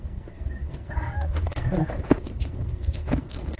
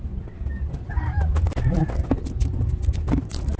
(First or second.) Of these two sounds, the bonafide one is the second